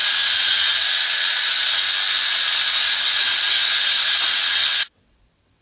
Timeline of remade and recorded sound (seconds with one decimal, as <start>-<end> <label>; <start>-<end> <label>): 0.0-1.8 remade; 1.8-2.3 recorded; 2.3-5.6 remade

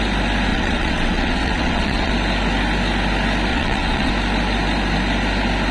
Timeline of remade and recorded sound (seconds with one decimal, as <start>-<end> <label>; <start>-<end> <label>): 0.0-0.5 recorded; 0.5-2.1 remade; 2.1-3.5 recorded; 3.5-4.1 remade; 4.1-5.7 recorded

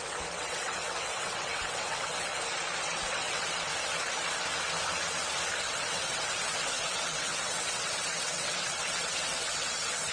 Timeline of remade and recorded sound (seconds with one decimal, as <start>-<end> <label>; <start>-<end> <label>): 0.0-2.3 remade; 2.3-2.8 recorded; 2.8-3.7 remade; 3.7-5.6 recorded; 5.6-10.1 remade

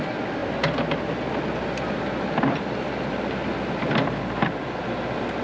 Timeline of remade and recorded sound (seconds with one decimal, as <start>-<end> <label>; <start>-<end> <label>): 0.0-5.4 recorded

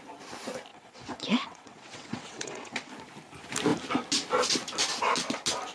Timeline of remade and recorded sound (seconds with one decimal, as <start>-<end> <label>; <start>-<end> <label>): 0.0-0.7 recorded; 0.7-2.9 remade; 2.9-5.7 recorded

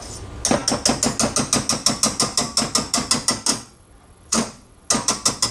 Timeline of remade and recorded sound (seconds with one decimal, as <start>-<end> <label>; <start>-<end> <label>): 0.0-3.5 recorded; 3.5-4.9 remade; 4.9-5.5 recorded